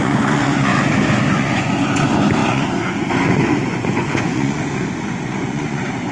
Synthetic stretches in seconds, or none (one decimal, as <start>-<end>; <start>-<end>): 0.0-0.7; 1.3-6.1

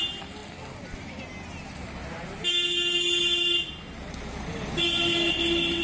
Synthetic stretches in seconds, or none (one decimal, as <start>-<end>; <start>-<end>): none

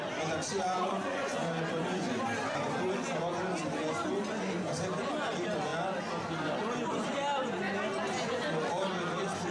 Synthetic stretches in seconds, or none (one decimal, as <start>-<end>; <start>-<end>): 0.5-2.2

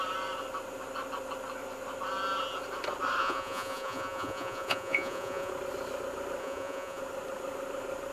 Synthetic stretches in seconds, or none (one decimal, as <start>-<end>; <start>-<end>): 3.2-5.5; 6.4-7.0

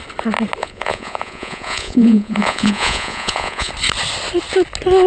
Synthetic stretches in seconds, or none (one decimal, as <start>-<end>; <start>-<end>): 0.6-3.7

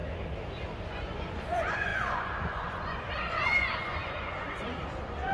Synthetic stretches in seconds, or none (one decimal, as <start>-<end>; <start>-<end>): 0.9-5.3